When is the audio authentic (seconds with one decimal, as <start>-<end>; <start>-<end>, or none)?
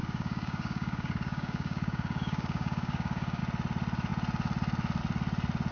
3.4-5.7